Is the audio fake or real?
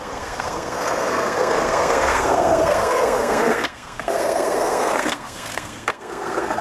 fake